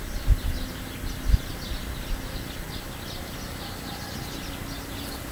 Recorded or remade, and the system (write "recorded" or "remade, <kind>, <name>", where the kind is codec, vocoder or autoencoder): recorded